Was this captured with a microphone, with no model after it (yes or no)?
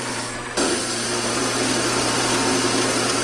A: no